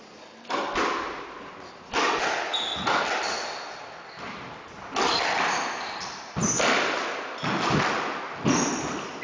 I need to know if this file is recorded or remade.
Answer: recorded